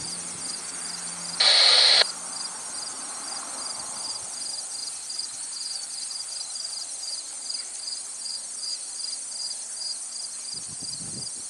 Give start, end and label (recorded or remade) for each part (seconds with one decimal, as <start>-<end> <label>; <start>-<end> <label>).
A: 0.0-4.8 recorded; 4.8-9.0 remade; 9.0-11.5 recorded